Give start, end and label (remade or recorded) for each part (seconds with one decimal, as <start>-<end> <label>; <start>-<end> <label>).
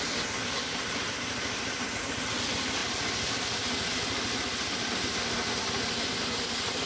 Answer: 0.0-6.9 recorded